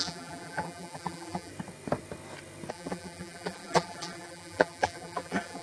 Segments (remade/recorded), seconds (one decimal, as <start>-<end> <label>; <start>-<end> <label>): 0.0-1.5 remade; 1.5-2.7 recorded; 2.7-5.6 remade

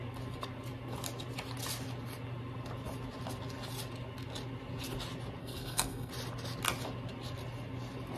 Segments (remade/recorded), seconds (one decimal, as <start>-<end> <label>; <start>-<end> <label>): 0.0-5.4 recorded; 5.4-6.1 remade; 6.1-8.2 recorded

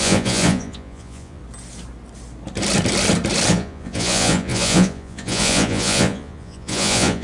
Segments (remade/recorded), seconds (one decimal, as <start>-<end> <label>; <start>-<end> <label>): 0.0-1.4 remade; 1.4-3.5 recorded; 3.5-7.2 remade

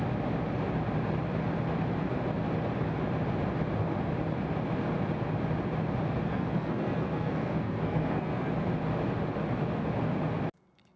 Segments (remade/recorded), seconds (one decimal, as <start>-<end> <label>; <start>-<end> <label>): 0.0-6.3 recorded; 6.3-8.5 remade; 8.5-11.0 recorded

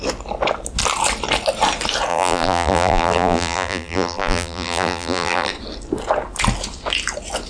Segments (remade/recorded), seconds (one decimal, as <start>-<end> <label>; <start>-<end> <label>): 0.0-2.1 recorded; 2.1-5.5 remade; 5.5-7.5 recorded

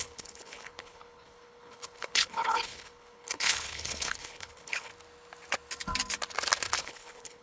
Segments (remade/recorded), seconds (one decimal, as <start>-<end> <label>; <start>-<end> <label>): 0.0-4.9 remade; 4.9-6.8 recorded; 6.8-7.4 remade

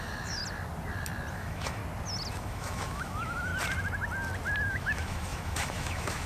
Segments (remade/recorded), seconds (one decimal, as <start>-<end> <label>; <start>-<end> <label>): 0.0-0.4 remade; 0.4-1.3 recorded; 1.3-1.8 remade; 1.8-2.4 recorded; 2.4-3.5 remade; 3.5-4.7 recorded; 4.7-6.3 remade